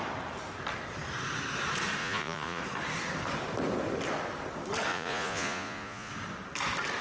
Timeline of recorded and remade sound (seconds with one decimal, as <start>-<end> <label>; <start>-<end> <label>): 0.0-2.0 recorded; 2.0-2.6 remade; 2.6-4.9 recorded; 4.9-6.1 remade; 6.1-7.0 recorded